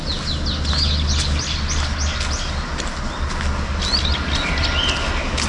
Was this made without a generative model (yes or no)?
yes